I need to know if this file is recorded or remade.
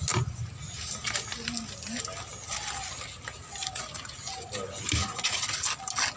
recorded